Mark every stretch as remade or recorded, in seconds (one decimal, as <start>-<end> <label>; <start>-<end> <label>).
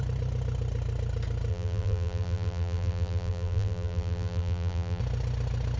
0.0-1.5 recorded; 1.5-5.0 remade; 5.0-5.8 recorded